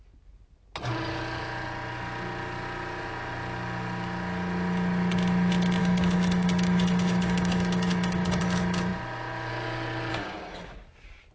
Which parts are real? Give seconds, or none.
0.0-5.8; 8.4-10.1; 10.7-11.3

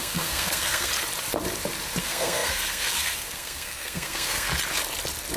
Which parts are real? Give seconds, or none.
0.9-2.0; 4.5-5.4

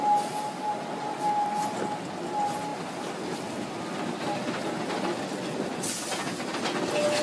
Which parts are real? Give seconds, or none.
0.0-7.2

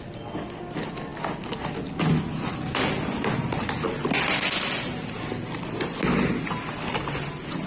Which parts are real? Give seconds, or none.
0.0-7.7

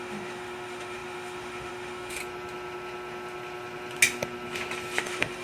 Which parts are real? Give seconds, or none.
2.2-5.0

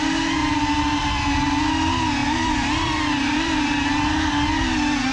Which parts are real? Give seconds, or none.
0.0-0.4; 1.2-2.2; 3.9-5.1

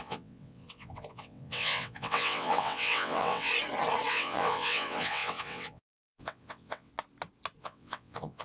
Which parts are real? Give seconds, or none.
3.5-4.1; 6.9-7.6

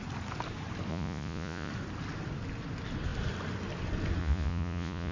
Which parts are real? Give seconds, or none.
0.0-0.9; 1.7-4.2